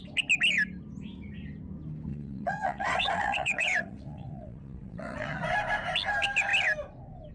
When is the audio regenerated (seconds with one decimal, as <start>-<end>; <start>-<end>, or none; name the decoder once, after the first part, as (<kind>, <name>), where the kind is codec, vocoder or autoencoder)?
2.1-5.4 (vocoder, WaveNeXt)